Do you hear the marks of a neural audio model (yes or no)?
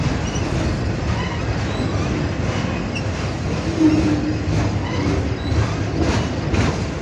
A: no